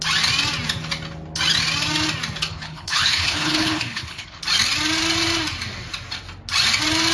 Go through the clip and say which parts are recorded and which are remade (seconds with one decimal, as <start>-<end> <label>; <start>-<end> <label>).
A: 0.0-2.5 recorded; 2.5-4.4 remade; 4.4-7.1 recorded